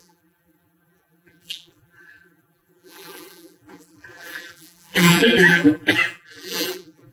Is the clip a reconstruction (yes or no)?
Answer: yes